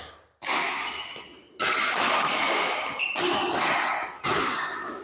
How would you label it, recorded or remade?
recorded